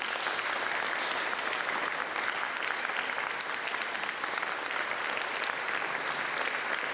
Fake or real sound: real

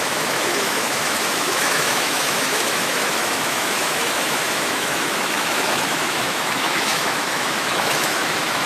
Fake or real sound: fake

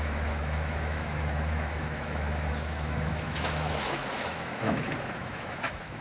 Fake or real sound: fake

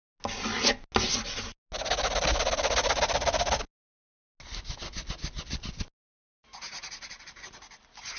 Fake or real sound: real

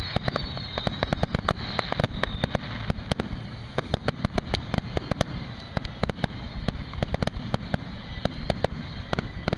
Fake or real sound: real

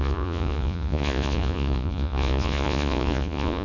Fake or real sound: fake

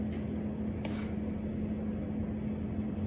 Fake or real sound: real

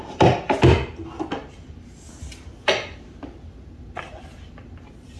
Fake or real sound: real